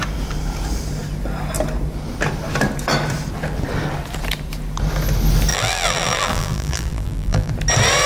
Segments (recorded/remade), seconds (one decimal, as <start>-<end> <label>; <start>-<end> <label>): 0.0-5.5 recorded; 5.5-7.5 remade; 7.5-8.1 recorded